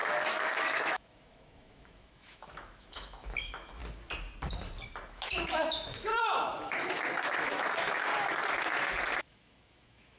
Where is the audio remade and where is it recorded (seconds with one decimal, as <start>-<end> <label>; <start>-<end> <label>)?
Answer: 0.0-3.8 remade; 3.8-5.1 recorded; 5.1-8.1 remade; 8.1-9.2 recorded; 9.2-10.2 remade